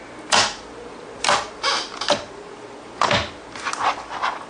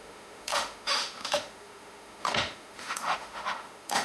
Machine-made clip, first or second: second